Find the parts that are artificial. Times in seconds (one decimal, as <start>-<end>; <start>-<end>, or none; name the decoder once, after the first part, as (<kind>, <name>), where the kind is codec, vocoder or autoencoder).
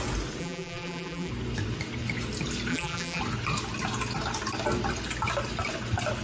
0.4-1.3 (vocoder, BigVGAN v2); 2.7-3.2